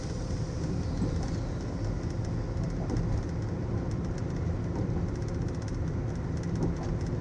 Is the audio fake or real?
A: real